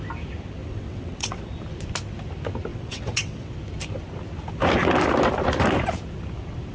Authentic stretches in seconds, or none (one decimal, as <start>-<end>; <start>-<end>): 0.0-0.6; 1.4-2.7; 3.5-6.7